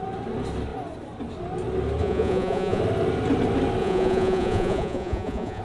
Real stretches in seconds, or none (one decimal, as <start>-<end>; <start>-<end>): 0.0-2.0; 2.8-3.8